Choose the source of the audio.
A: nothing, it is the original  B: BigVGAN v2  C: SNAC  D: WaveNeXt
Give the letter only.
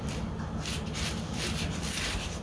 B